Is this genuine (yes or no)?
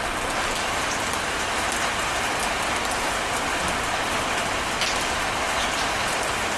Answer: yes